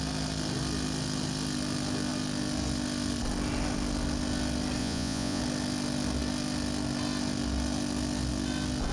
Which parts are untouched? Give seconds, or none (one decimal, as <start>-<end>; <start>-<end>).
0.0-4.8; 5.4-8.9

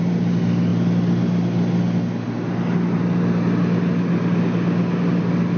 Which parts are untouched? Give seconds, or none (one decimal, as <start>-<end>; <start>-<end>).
0.0-5.6

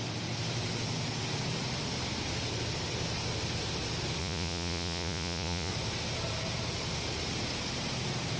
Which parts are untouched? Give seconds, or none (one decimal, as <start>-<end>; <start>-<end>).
0.0-4.2; 5.7-8.4

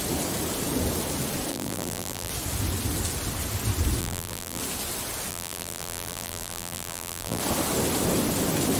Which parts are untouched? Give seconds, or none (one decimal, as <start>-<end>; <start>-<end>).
0.0-1.5; 2.3-4.0; 4.6-5.3; 7.4-8.8

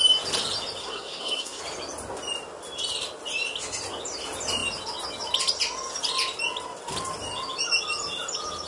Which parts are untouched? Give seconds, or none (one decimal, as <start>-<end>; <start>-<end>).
0.0-0.8; 1.6-8.7

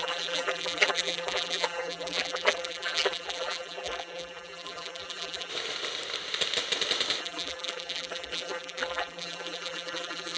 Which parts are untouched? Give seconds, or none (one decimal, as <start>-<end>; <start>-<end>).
5.5-7.2

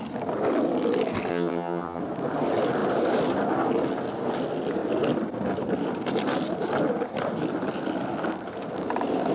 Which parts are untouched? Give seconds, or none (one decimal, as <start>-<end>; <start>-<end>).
0.0-1.3; 2.0-9.3